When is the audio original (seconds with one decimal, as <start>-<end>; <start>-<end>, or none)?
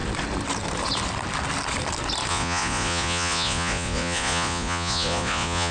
0.0-2.3